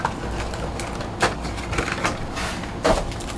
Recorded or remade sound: recorded